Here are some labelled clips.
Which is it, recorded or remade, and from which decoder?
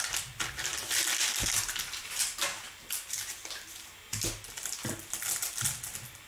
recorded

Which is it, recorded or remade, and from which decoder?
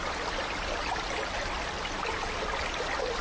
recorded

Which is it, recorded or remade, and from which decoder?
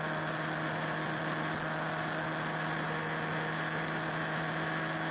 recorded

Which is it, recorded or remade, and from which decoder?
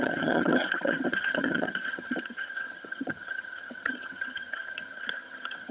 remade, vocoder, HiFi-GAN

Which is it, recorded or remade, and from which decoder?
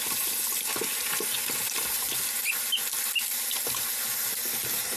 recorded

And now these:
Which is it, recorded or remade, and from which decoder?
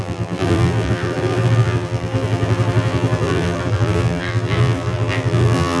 remade, vocoder, BigVGAN v2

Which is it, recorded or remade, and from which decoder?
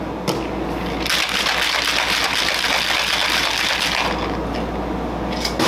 recorded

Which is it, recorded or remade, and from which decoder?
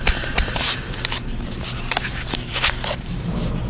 remade, vocoder, BigVGAN v2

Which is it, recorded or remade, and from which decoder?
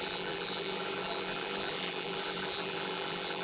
remade, vocoder, BigVGAN v2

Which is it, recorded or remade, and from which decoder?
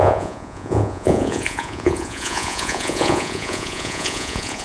remade, vocoder, Vocos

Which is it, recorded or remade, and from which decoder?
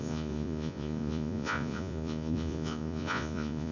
remade, vocoder, Vocos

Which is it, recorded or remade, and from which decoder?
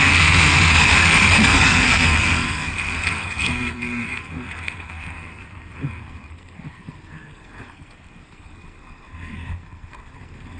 remade, codec, SNAC